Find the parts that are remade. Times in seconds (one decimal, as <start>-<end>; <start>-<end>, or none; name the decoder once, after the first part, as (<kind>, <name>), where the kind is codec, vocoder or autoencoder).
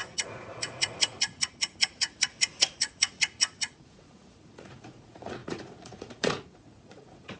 0.0-7.4 (vocoder, Vocos)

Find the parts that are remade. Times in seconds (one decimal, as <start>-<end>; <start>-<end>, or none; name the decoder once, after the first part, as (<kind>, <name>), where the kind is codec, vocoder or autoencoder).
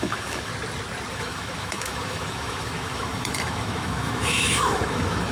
0.0-0.5 (autoencoder, DAC-VAE); 1.1-5.3